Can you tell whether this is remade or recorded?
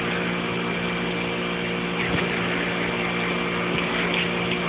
recorded